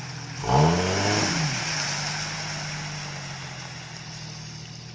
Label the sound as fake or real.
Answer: real